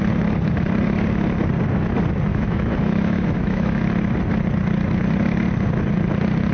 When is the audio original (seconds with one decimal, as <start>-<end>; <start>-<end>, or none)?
0.0-2.3; 3.8-6.5

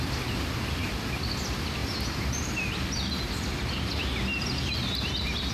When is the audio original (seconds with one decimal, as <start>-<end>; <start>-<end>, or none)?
0.0-1.8; 2.7-5.5

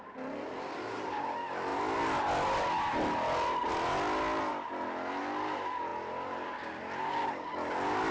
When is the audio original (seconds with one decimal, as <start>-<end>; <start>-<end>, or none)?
0.0-8.1

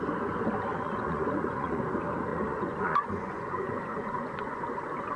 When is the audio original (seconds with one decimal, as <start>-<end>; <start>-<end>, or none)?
0.0-0.7; 1.8-2.3; 4.6-5.2

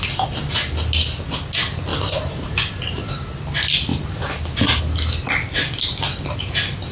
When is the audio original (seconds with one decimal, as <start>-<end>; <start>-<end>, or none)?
0.0-1.9; 2.6-3.9; 4.8-6.9

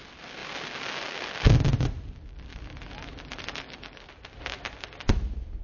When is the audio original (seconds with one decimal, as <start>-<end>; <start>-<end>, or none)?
0.0-2.5; 4.1-5.6

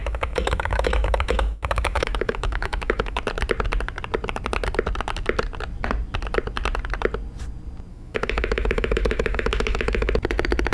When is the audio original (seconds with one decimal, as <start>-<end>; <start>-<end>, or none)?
3.2-7.9; 10.1-10.7

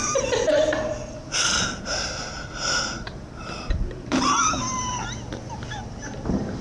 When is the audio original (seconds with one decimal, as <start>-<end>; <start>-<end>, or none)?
4.6-5.7